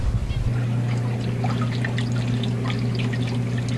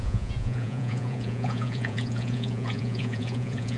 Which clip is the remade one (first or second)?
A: second